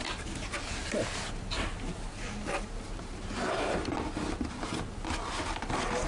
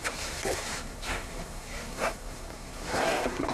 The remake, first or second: second